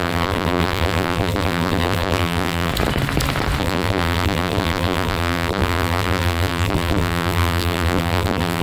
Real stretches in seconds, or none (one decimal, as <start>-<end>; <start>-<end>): 2.7-3.6